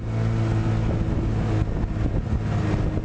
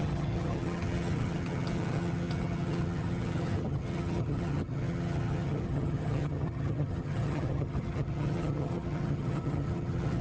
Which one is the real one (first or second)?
first